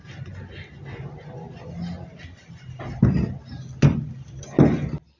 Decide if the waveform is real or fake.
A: real